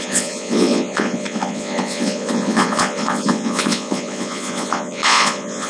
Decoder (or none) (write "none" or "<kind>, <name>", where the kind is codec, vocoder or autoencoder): vocoder, Vocos